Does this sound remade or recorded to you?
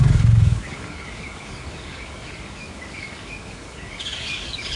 remade